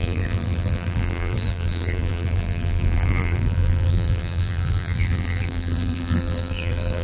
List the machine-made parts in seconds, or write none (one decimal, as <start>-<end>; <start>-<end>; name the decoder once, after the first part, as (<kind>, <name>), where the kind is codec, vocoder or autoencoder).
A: 0.0-7.0 (vocoder, BigVGAN v2)